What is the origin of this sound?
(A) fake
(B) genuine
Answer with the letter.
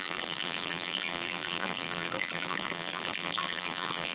A